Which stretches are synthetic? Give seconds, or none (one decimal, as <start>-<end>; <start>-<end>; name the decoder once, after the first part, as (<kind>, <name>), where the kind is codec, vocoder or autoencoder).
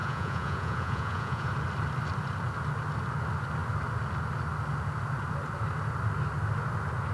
0.0-1.5 (vocoder, Vocos)